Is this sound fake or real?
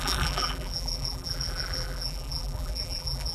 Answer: fake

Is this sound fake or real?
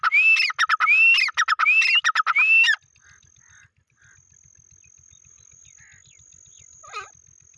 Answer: real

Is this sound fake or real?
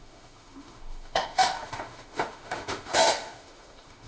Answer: fake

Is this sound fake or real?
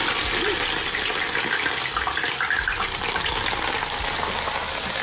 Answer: real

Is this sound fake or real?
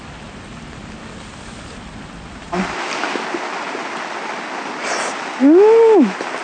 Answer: real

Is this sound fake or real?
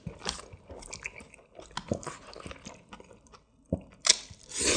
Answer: real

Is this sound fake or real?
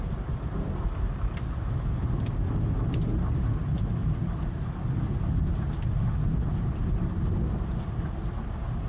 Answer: real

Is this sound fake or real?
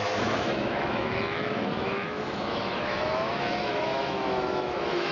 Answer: fake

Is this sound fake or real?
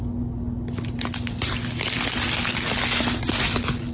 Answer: real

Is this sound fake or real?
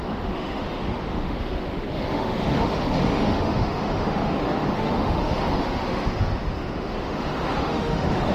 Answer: fake